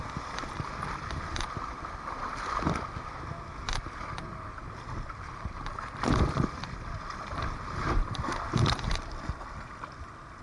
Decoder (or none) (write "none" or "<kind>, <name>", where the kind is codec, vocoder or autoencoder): none